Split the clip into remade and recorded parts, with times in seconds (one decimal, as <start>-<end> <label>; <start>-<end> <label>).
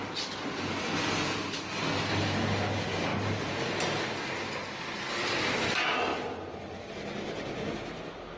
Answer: 0.0-8.4 recorded